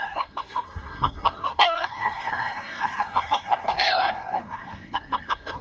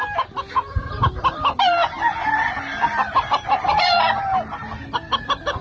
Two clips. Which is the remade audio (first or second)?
first